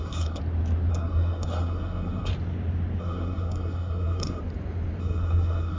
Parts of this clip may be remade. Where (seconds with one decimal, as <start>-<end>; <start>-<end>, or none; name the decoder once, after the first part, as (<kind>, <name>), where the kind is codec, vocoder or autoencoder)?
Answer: 0.0-0.4 (codec, SNAC); 0.9-2.3; 3.0-4.4; 5.0-5.8